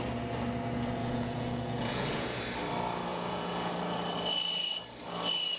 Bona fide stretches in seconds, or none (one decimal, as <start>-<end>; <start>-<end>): 0.0-1.0; 2.4-3.1; 3.7-5.6